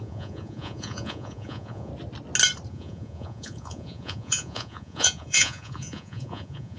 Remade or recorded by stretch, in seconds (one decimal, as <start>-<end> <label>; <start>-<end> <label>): 0.0-1.9 remade; 1.9-2.7 recorded; 2.7-6.8 remade